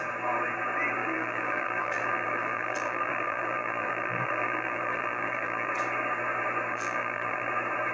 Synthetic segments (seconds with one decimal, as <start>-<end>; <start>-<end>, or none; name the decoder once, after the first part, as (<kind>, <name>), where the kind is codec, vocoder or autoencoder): 1.0-5.7 (vocoder, BigVGAN v2); 6.7-7.5